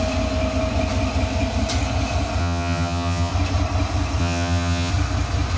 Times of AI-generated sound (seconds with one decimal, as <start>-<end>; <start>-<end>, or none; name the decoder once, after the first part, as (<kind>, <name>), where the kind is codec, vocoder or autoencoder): 2.4-3.3 (vocoder, HiFi-GAN); 4.2-4.9